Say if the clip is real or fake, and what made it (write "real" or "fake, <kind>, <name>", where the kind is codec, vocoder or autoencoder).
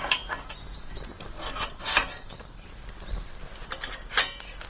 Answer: real